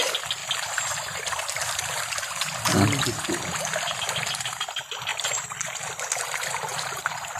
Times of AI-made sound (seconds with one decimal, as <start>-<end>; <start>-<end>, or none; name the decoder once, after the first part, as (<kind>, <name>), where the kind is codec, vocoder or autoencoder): none